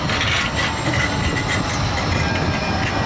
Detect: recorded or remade recorded